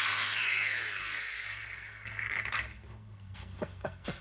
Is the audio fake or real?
fake